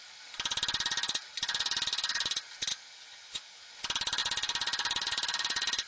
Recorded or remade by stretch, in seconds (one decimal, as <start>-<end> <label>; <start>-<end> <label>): 0.0-2.7 recorded; 2.7-3.7 remade; 3.7-5.9 recorded